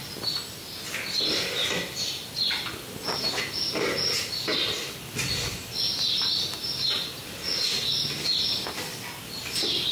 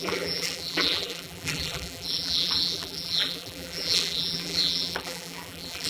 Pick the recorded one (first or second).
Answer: first